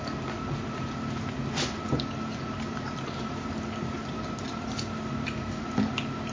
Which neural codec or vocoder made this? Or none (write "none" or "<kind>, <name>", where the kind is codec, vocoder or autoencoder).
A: none